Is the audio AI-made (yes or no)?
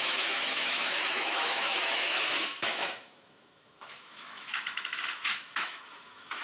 yes